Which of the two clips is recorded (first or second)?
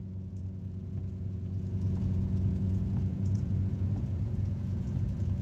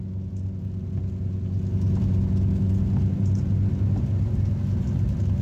second